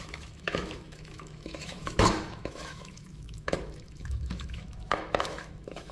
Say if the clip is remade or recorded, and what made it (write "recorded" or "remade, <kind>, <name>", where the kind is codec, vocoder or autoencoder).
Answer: remade, autoencoder, DAC-VAE